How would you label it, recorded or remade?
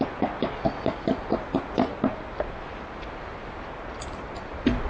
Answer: recorded